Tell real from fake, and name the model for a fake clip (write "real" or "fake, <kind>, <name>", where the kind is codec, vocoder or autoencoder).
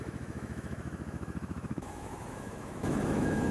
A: fake, autoencoder, DAC-VAE